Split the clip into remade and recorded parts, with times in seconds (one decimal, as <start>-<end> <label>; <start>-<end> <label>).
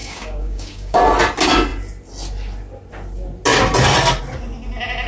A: 0.0-1.0 remade; 1.0-5.1 recorded